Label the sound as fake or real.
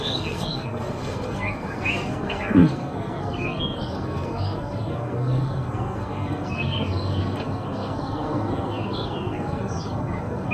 fake